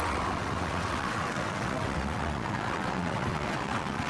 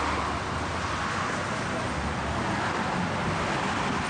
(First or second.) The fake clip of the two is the first